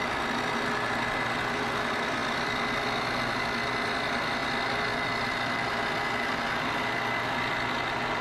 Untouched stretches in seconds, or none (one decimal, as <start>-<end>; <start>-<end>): 0.0-8.2